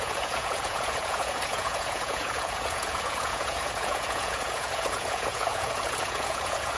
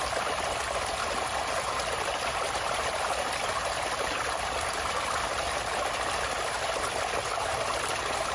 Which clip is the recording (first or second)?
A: second